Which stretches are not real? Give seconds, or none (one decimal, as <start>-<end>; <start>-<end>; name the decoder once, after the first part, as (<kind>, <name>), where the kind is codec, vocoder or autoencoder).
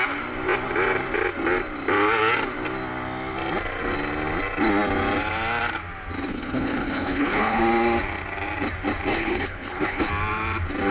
6.3-7.6 (codec, HILCodec); 9.1-10.1